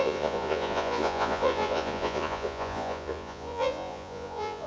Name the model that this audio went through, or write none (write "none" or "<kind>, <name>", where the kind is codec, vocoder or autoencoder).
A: vocoder, Vocos